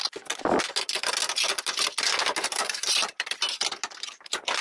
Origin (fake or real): real